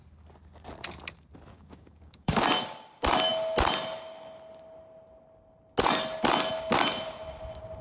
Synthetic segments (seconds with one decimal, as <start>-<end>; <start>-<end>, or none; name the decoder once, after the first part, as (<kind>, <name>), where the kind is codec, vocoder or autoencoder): 1.5-2.4 (codec, DAC)